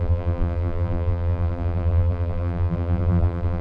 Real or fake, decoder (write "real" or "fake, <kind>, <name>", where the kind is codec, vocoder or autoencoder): fake, vocoder, BigVGAN v2